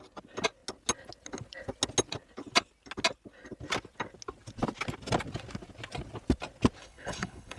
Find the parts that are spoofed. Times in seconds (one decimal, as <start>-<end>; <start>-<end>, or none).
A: 6.8-7.6